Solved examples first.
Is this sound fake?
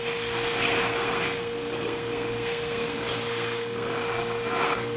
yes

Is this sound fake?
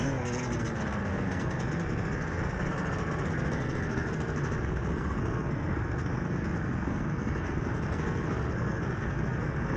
yes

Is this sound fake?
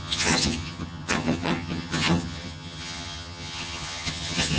yes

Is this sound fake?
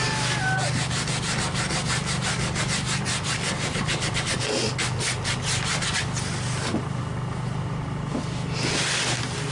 no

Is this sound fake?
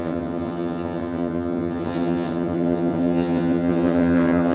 yes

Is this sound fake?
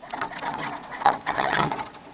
yes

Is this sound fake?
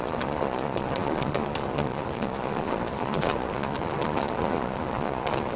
yes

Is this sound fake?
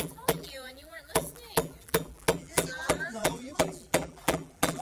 yes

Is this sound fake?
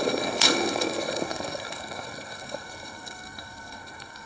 yes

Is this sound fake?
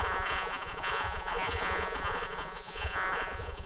yes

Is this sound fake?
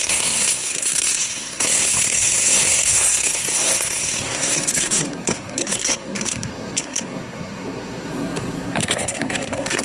yes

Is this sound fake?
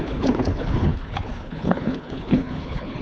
yes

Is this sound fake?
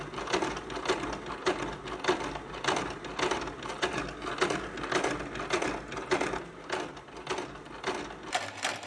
no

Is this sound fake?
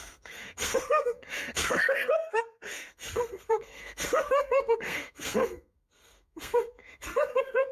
yes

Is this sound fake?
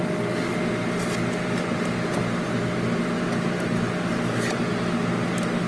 no